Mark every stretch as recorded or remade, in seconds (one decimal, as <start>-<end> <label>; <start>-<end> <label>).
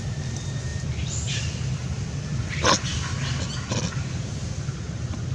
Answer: 0.0-0.7 recorded; 0.7-2.4 remade; 2.4-5.3 recorded